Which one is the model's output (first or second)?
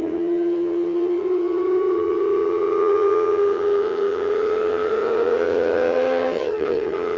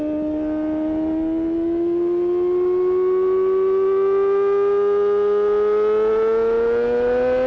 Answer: first